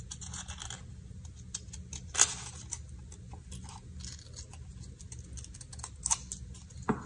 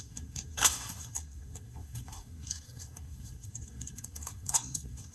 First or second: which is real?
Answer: first